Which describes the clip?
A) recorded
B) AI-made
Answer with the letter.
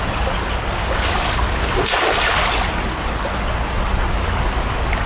A